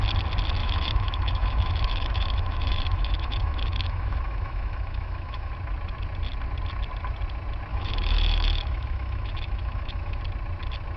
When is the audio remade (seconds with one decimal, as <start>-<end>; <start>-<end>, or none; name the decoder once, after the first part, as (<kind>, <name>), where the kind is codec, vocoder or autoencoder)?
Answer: 0.6-5.5 (autoencoder, DAC-VAE); 7.7-10.2